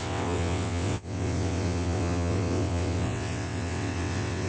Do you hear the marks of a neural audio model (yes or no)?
yes